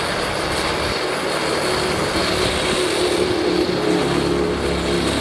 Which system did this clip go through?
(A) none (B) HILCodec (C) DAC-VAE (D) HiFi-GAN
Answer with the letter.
A